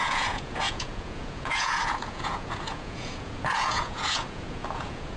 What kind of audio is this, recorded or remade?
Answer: remade